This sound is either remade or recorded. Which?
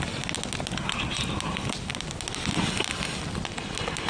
recorded